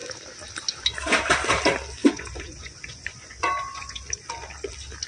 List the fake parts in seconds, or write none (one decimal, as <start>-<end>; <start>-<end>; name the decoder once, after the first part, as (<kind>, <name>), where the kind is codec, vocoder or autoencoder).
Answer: 2.0-4.0 (vocoder, Vocos)